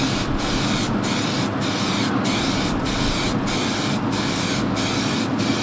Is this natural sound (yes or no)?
yes